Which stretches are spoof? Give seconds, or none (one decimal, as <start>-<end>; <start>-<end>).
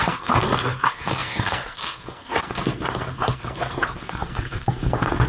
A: 0.0-5.3